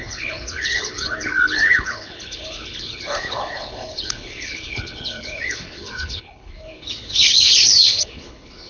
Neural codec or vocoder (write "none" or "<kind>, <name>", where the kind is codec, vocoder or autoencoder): codec, HILCodec